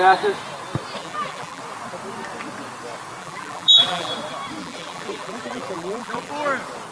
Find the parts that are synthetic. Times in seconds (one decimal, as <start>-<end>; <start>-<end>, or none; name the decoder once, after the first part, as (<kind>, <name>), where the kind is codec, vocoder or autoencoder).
1.0-1.6 (vocoder, BigVGAN v2); 3.2-4.1; 4.6-6.3